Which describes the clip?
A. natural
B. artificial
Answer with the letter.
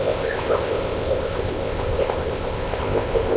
B